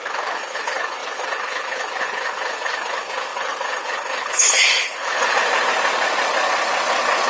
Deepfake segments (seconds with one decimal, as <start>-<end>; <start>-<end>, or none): 0.0-5.4